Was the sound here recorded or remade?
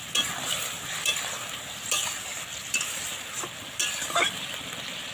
recorded